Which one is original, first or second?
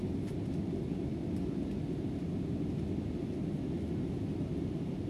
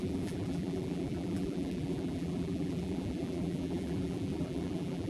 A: first